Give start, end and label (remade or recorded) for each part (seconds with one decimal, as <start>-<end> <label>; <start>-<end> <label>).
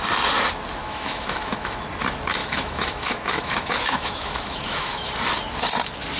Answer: 0.0-0.8 recorded; 0.8-1.8 remade; 1.8-2.4 recorded; 2.4-5.1 remade; 5.1-6.2 recorded